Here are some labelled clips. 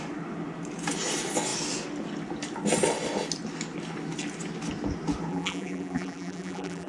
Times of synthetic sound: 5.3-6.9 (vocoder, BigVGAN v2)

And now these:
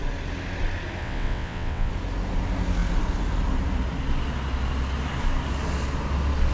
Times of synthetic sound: 1.0-1.9 (vocoder, WaveNeXt)